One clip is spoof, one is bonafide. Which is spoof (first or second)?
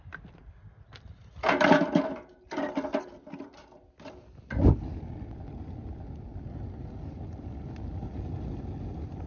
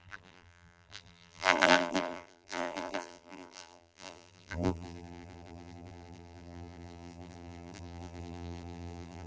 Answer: second